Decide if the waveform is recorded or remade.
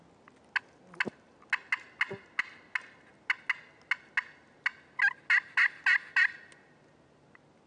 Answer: recorded